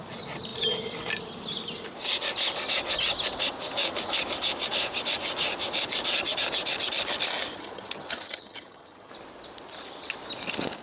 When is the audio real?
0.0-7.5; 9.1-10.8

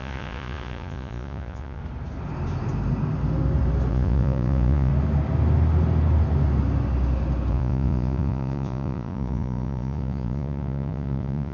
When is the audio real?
1.8-3.9; 4.9-7.5

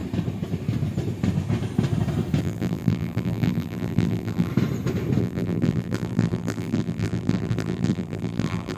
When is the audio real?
0.0-2.4; 4.5-5.2

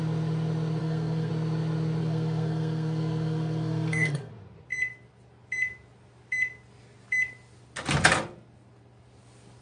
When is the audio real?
0.0-0.8; 1.3-2.0; 4.3-9.6

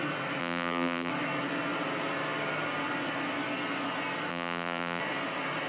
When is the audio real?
0.0-0.4; 1.1-4.3; 5.0-5.7